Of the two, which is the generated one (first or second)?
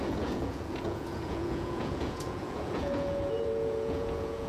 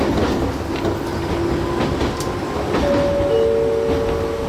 first